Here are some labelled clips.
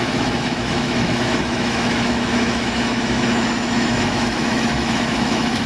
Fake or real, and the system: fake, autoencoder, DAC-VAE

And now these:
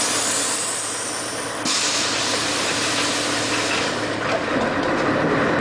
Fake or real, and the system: real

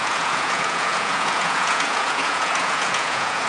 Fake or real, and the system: fake, vocoder, Vocos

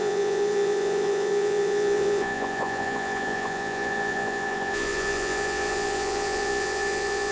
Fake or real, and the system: fake, vocoder, Vocos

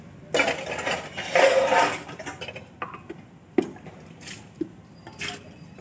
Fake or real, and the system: real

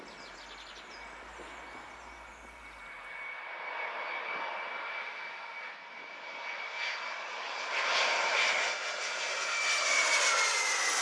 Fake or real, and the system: real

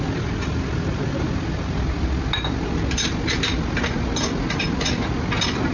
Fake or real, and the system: real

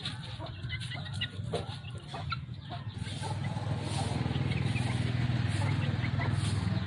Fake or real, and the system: real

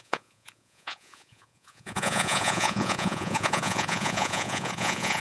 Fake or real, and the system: fake, vocoder, Vocos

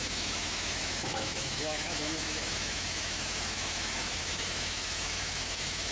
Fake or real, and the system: fake, autoencoder, DAC-VAE